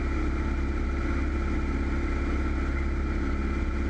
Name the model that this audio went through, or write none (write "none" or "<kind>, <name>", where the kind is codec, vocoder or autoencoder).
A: none